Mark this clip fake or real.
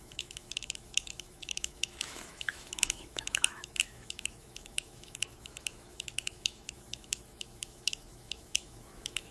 fake